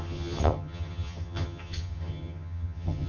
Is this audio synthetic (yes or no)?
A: yes